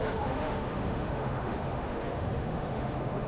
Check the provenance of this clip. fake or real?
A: fake